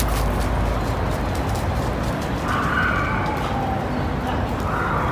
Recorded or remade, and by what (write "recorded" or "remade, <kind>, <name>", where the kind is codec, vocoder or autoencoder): recorded